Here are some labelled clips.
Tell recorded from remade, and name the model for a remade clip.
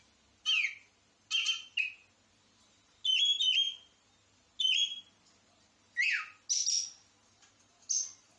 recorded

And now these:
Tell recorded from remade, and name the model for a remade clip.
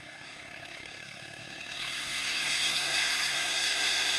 remade, codec, SNAC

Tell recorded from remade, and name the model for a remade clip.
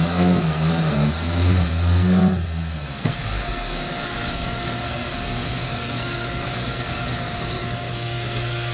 remade, codec, SNAC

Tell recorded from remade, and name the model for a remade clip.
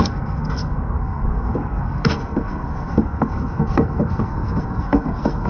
remade, codec, SNAC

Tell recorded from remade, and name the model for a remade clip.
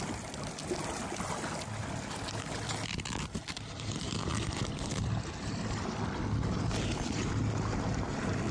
recorded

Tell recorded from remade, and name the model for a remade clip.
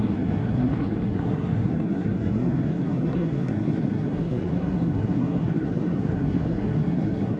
remade, codec, SNAC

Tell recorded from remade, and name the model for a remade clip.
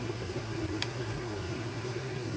remade, codec, SNAC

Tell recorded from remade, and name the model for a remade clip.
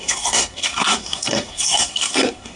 remade, codec, SNAC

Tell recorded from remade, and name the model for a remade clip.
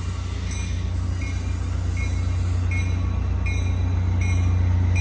recorded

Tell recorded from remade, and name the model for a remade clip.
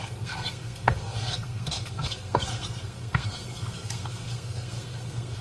remade, codec, SNAC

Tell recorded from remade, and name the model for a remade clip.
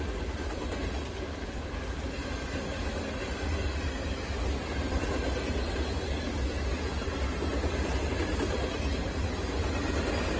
recorded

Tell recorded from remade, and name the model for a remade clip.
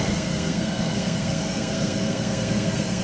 remade, codec, SNAC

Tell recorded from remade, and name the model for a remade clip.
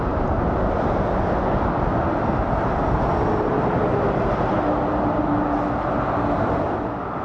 recorded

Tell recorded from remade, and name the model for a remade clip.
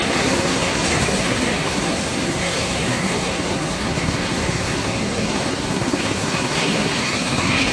remade, codec, SNAC